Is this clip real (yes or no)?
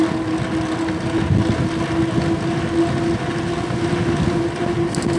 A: yes